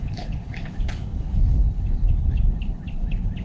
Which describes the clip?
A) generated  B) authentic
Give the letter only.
A